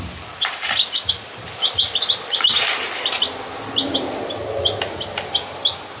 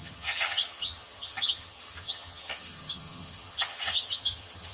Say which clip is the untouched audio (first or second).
first